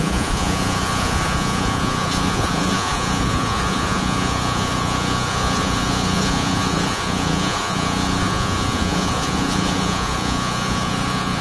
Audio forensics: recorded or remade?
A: remade